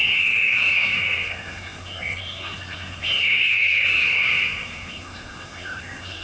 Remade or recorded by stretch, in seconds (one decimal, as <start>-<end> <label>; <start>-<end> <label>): 0.0-6.2 remade